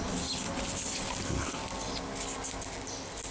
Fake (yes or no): no